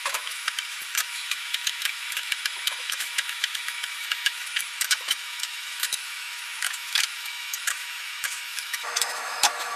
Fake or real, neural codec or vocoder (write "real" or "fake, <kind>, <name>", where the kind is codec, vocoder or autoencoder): fake, autoencoder, DAC-VAE